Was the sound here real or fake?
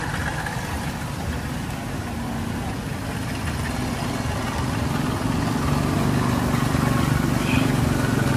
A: real